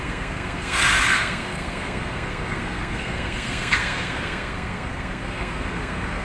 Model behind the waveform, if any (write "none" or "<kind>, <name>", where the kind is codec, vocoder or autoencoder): codec, SNAC